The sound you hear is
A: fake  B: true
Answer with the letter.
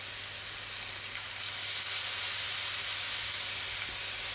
B